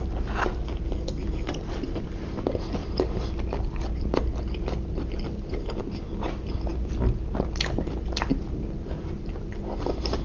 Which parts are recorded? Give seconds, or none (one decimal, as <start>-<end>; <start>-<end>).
0.0-10.2